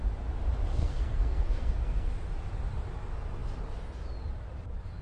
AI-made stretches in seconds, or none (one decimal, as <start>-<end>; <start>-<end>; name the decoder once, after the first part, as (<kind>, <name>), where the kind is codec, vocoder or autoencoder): 0.7-2.1 (codec, SNAC)